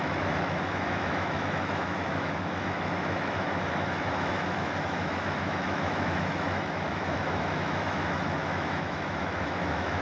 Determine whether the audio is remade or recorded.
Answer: remade